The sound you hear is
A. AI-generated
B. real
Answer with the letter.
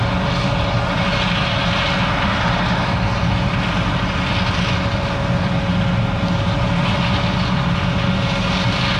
B